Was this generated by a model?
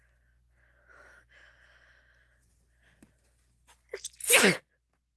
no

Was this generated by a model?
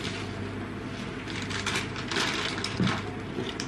no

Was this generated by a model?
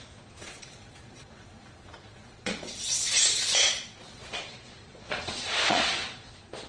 yes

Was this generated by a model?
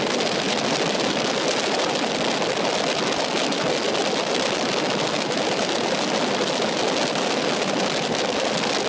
no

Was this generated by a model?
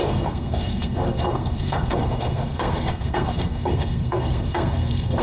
yes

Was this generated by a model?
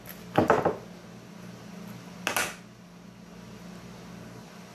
no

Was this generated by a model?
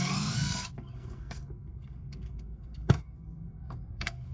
yes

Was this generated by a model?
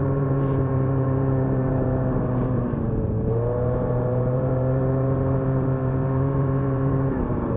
yes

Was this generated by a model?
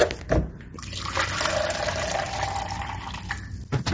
no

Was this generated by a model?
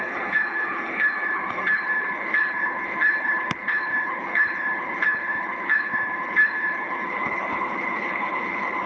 yes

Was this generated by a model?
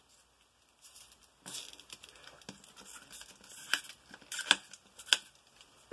no